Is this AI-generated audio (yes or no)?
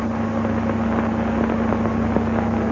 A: no